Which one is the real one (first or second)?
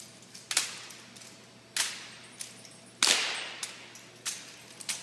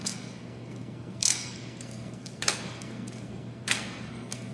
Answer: first